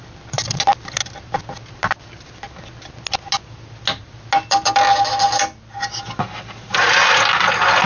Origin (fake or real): real